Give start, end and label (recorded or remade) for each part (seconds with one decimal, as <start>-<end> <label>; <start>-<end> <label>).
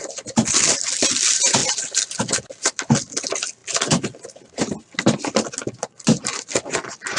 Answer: 0.0-7.2 recorded